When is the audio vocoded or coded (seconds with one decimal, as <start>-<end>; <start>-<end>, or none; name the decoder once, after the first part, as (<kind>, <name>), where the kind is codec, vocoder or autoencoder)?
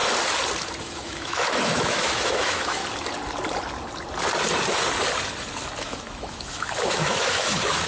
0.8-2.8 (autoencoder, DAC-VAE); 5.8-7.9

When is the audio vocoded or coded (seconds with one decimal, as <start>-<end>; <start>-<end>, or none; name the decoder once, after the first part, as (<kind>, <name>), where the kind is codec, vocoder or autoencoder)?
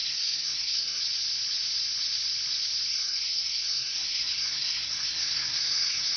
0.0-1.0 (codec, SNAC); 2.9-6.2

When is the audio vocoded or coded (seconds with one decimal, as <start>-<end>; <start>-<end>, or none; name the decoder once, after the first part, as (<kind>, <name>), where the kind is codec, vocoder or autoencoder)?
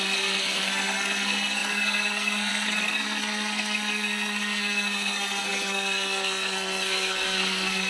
0.0-7.9 (codec, SNAC)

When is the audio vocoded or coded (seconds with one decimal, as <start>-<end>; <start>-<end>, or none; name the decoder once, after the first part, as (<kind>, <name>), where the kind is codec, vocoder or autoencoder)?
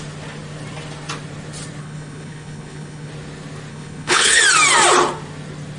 1.8-3.1 (codec, HILCodec); 3.7-4.4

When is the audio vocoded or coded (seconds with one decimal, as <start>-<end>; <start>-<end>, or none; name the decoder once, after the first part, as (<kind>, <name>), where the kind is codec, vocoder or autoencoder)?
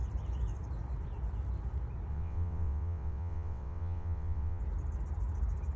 2.1-4.6 (vocoder, WaveNeXt)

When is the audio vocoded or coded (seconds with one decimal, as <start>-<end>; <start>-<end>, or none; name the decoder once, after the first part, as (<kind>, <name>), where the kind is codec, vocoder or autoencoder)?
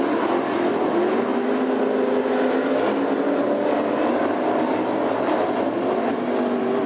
none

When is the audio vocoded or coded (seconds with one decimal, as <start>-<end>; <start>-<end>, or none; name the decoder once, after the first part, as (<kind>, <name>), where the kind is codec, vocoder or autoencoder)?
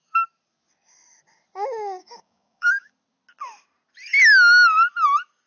2.0-2.9 (codec, DAC)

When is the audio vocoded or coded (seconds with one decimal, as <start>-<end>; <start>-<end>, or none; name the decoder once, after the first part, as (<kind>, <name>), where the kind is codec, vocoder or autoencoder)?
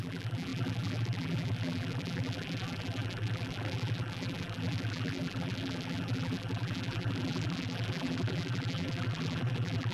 0.0-9.9 (vocoder, BigVGAN v2)